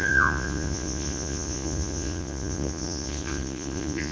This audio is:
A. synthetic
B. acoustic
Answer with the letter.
A